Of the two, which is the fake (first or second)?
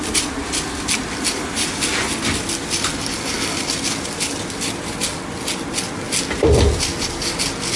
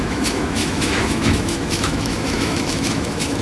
second